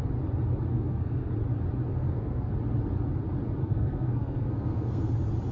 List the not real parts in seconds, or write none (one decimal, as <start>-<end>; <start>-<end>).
0.7-1.3; 1.9-2.5; 3.6-5.1